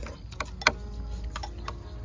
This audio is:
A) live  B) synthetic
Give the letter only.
A